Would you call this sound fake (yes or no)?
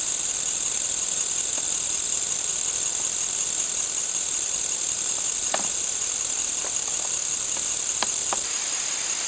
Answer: no